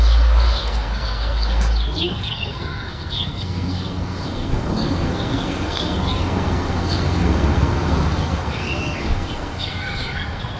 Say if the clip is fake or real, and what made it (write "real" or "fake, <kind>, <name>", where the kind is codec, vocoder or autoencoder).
fake, codec, SNAC